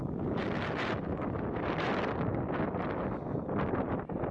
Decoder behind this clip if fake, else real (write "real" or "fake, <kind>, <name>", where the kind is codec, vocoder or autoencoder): real